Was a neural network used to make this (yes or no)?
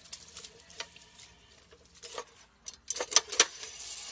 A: no